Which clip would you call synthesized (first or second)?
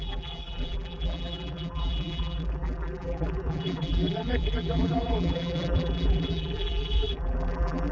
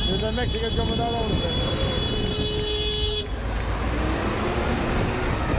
first